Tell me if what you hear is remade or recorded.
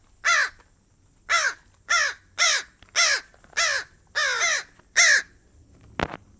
recorded